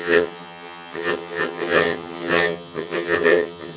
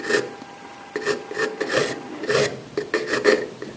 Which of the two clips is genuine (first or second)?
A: second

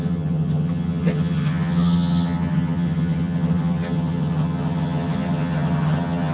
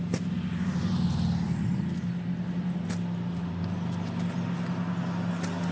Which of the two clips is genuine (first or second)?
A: second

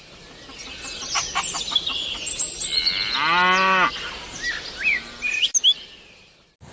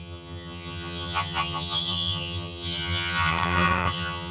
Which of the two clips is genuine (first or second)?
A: first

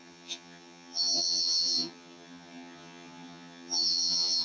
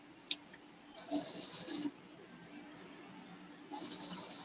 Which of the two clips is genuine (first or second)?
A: second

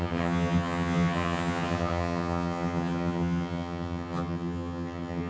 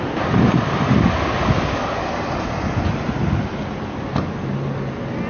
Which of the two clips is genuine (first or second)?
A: second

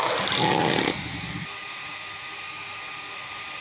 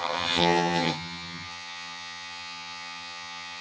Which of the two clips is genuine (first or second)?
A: first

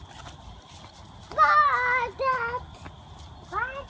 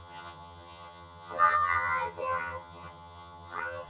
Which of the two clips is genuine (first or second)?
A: first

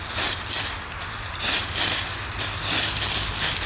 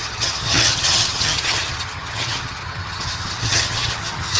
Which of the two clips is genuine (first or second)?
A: first